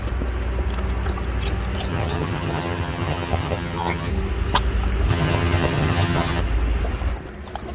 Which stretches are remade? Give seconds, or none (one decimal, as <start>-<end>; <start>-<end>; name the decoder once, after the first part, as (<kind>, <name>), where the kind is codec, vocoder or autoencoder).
1.9-4.1 (vocoder, HiFi-GAN); 5.1-6.4